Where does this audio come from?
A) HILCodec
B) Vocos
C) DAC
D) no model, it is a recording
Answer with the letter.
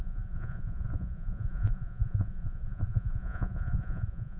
B